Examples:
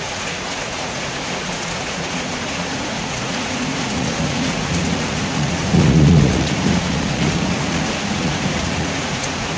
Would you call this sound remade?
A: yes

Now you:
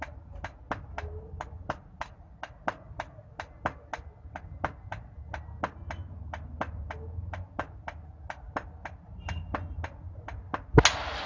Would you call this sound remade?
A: no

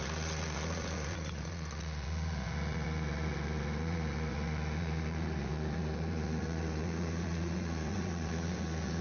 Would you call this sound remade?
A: yes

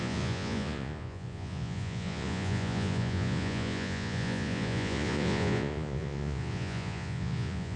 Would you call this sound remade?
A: yes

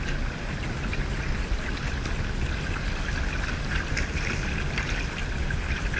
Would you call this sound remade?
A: no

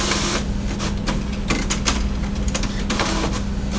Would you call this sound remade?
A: no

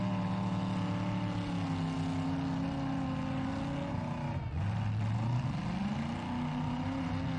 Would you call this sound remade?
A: no